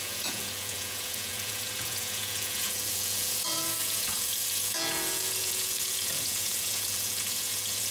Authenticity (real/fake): fake